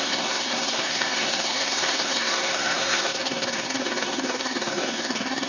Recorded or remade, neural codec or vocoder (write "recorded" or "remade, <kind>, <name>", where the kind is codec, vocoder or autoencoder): remade, codec, SNAC